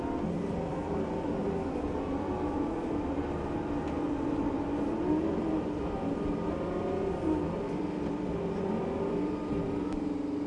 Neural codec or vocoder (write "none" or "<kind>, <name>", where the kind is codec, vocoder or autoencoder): vocoder, BigVGAN v2